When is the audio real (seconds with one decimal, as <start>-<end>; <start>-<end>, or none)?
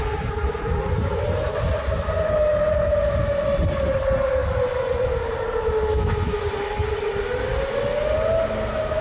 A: 0.0-5.9; 6.5-9.0